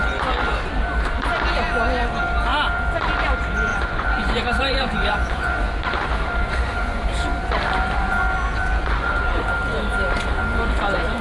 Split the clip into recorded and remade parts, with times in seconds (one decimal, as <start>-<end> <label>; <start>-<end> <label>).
0.0-3.7 recorded; 3.7-5.7 remade; 5.7-6.4 recorded; 6.4-7.1 remade; 7.1-8.8 recorded; 8.8-9.4 remade; 9.4-11.2 recorded